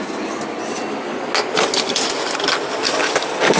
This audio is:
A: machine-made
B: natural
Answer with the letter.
B